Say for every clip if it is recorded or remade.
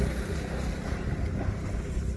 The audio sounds recorded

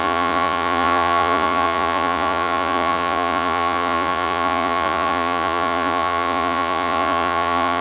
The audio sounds remade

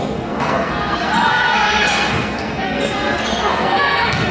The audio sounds remade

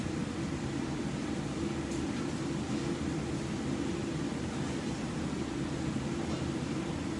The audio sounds recorded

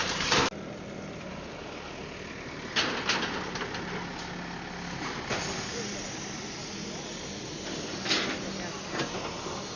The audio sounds recorded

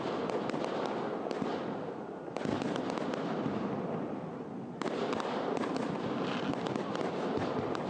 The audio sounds recorded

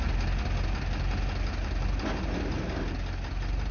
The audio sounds recorded